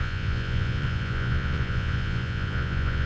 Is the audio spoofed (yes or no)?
yes